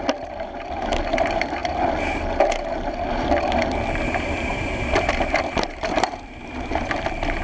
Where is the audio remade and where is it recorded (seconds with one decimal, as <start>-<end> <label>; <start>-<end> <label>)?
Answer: 0.0-1.6 remade; 1.6-2.9 recorded; 2.9-7.4 remade